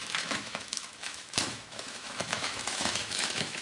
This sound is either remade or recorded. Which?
remade